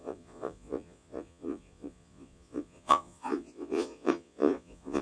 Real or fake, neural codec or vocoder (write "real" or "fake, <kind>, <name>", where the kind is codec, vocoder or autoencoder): fake, vocoder, Vocos